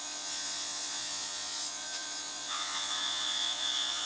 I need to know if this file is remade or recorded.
remade